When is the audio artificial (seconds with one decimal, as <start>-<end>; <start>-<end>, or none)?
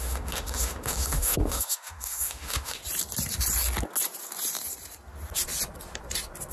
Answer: 0.0-2.8